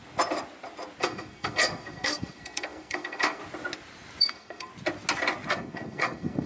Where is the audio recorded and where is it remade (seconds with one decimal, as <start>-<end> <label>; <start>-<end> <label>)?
0.0-1.0 recorded; 1.0-3.4 remade; 3.4-4.2 recorded; 4.2-4.7 remade; 4.7-5.5 recorded; 5.5-6.5 remade